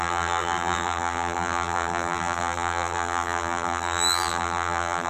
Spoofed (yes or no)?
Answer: yes